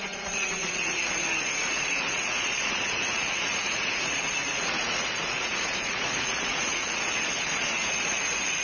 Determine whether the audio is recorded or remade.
remade